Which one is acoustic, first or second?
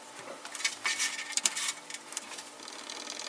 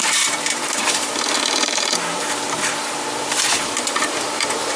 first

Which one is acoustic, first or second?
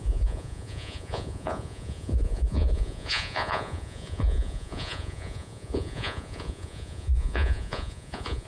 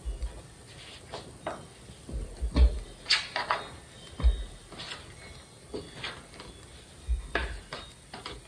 second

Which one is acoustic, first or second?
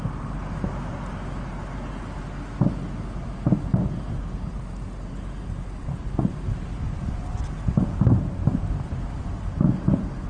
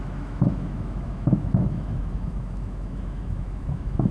first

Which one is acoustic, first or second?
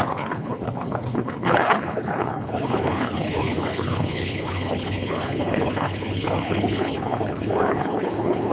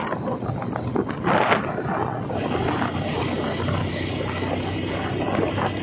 second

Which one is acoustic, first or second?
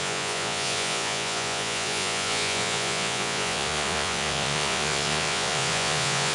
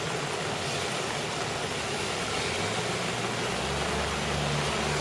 second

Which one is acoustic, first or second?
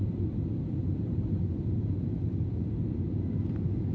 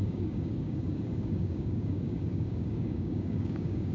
first